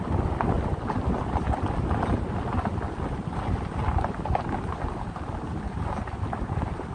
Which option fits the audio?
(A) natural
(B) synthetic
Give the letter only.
A